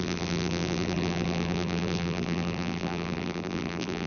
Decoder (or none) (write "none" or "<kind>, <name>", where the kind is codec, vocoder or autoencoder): vocoder, BigVGAN v2